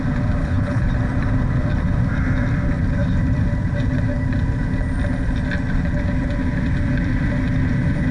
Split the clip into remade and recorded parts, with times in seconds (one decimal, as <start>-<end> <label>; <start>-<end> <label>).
0.0-0.4 recorded; 0.4-0.9 remade; 0.9-8.1 recorded